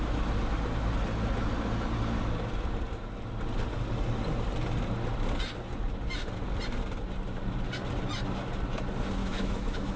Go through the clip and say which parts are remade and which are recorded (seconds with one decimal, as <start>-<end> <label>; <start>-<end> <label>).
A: 0.0-9.2 recorded; 9.2-10.0 remade